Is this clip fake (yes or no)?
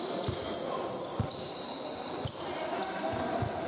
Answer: yes